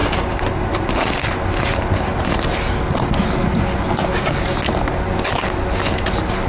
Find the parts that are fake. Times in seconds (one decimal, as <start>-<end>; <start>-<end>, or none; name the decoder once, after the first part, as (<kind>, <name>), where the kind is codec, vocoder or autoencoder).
0.0-0.8 (vocoder, BigVGAN v2)